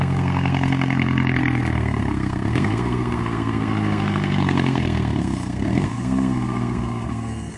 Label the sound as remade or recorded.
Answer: remade